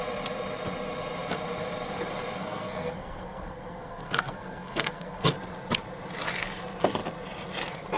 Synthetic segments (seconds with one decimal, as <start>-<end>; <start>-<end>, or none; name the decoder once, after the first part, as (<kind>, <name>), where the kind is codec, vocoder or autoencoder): 2.4-5.3 (codec, SNAC)